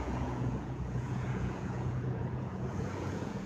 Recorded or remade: remade